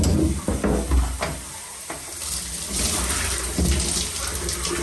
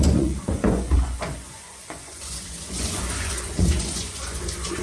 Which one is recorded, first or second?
first